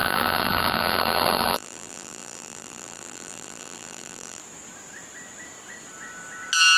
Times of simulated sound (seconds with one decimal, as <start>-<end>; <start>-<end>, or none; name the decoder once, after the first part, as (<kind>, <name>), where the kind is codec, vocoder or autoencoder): 0.0-4.4 (vocoder, BigVGAN v2)